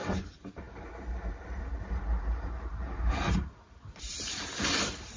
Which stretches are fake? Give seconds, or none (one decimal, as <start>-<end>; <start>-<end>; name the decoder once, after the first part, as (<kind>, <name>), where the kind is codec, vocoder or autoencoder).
0.0-5.2 (vocoder, BigVGAN v2)